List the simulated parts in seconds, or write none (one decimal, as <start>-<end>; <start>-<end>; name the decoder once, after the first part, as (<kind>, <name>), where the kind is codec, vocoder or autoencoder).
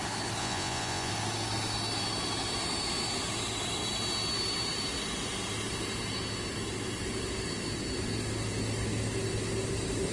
0.4-1.1 (vocoder, Vocos)